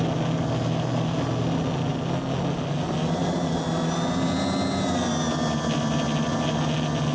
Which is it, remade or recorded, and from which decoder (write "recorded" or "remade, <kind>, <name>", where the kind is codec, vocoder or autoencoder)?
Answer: recorded